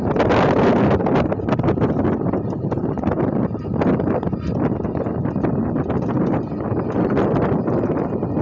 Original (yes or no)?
yes